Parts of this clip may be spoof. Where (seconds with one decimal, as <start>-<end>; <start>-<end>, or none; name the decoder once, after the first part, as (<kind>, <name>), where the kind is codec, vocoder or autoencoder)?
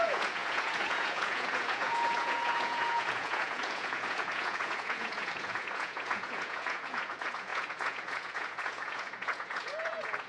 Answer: 0.0-10.3 (vocoder, Vocos)